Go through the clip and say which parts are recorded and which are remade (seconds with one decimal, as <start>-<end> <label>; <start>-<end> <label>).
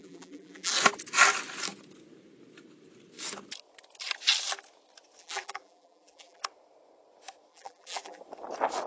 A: 0.0-0.7 remade; 0.7-5.2 recorded; 5.2-6.4 remade; 6.4-7.5 recorded; 7.5-8.2 remade; 8.2-8.9 recorded